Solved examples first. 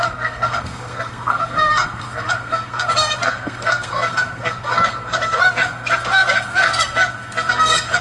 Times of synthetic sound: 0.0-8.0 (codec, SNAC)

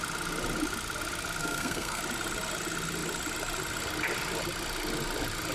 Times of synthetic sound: 1.4-2.0 (codec, SNAC)

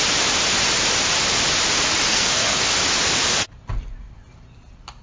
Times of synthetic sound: 2.1-2.6 (codec, SNAC)

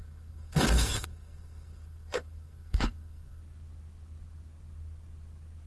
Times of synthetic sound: 0.0-3.4 (codec, SNAC)